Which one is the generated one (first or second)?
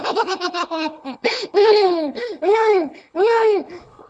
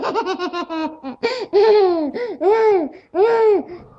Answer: first